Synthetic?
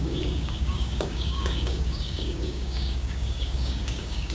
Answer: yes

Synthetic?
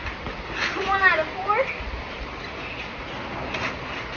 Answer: no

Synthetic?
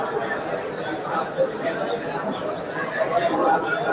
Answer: no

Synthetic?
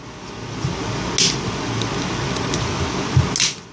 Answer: no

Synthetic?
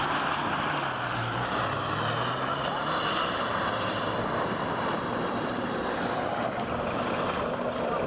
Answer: no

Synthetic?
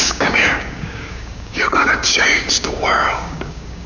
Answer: yes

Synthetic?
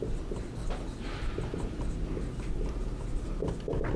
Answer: no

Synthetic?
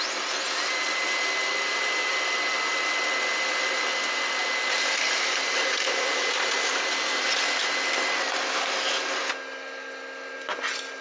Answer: no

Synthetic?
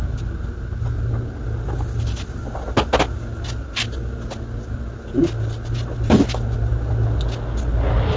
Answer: no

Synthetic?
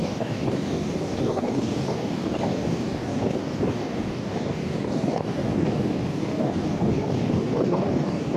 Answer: yes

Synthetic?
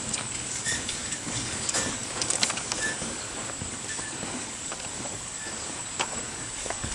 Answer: yes